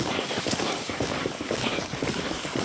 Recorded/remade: remade